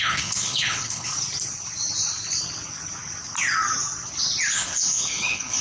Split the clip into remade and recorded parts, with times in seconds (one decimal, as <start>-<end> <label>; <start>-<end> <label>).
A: 0.0-1.1 remade; 1.1-4.5 recorded; 4.5-5.6 remade